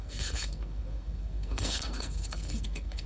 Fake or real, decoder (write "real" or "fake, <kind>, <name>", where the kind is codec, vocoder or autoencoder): fake, codec, SNAC